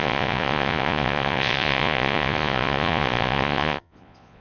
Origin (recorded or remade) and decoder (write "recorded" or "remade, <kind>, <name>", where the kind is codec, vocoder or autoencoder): remade, vocoder, Vocos